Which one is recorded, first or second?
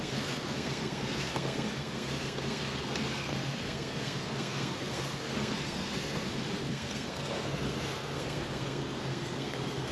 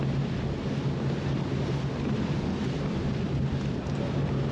second